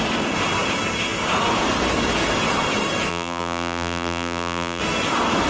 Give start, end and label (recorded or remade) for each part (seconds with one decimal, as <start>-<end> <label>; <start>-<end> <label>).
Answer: 0.0-3.1 recorded; 3.1-4.8 remade; 4.8-5.5 recorded

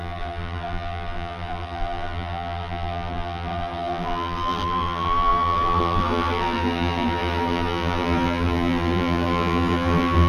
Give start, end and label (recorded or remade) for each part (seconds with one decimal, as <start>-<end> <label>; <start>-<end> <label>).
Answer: 0.0-10.3 remade

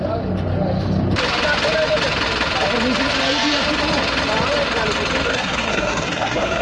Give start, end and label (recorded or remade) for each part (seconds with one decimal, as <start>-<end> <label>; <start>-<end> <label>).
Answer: 0.0-5.3 recorded; 5.3-6.6 remade

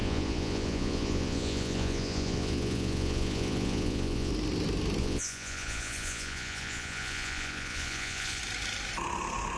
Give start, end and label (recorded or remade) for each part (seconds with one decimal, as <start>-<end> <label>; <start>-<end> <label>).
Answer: 0.0-4.3 remade; 4.3-5.0 recorded; 5.0-8.4 remade; 8.4-9.6 recorded